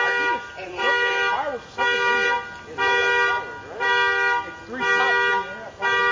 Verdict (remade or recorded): recorded